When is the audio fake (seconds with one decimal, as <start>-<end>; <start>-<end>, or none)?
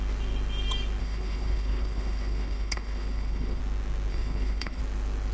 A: 1.0-3.6; 4.1-4.8